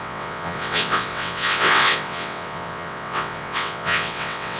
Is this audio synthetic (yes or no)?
yes